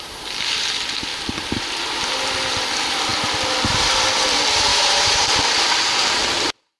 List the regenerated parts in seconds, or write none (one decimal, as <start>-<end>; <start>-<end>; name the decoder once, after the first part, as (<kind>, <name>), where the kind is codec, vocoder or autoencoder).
4.7-5.2 (autoencoder, DAC-VAE)